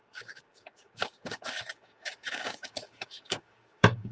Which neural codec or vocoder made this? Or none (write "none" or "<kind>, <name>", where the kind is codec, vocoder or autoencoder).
codec, DAC